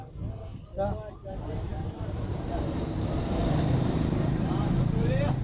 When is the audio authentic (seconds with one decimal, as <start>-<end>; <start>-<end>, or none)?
0.5-1.1